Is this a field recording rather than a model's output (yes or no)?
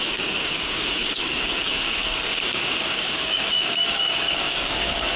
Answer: no